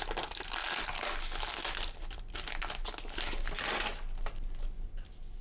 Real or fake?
real